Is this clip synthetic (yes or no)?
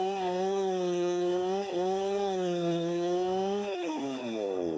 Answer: yes